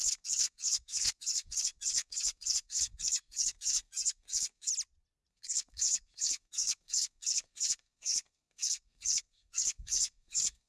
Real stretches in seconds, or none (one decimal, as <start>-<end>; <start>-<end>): 4.7-5.3